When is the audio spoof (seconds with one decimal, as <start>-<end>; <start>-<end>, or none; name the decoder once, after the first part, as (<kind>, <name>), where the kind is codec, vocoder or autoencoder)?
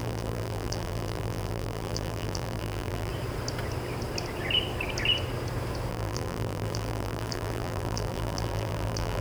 0.0-3.1 (vocoder, BigVGAN v2); 5.9-9.2